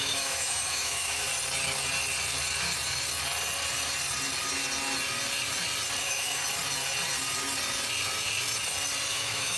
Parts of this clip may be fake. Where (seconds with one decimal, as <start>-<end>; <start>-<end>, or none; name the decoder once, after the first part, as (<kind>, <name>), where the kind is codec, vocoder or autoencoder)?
0.0-1.3 (autoencoder, DAC-VAE); 6.0-6.4; 9.1-9.6